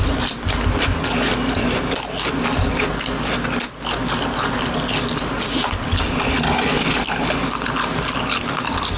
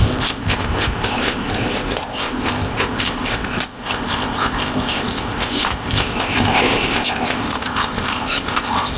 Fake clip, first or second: second